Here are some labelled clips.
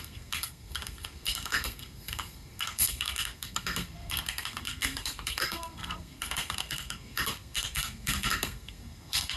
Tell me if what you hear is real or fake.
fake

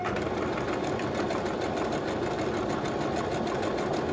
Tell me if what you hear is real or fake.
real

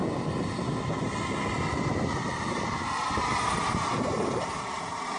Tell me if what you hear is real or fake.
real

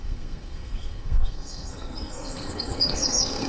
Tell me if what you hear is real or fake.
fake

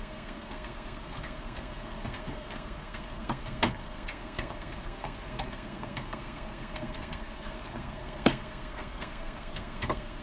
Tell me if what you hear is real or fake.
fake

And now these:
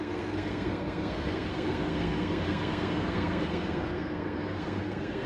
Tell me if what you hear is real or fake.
fake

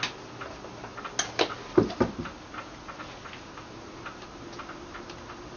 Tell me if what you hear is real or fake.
real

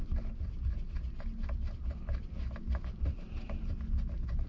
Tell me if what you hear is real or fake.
real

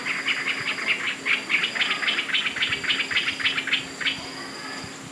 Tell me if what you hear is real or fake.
real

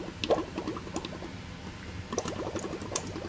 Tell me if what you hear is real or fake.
real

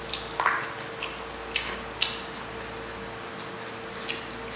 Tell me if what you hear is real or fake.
real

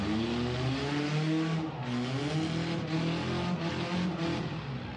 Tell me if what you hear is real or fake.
real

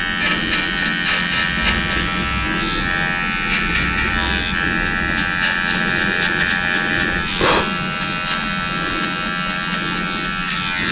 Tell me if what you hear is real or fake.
real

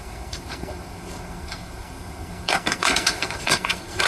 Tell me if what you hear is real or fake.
fake